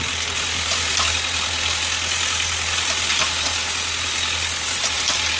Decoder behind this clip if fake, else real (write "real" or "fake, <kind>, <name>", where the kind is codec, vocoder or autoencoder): real